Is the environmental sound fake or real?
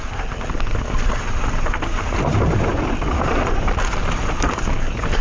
real